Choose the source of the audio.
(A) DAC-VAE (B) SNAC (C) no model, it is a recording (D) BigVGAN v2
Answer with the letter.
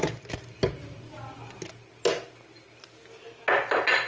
C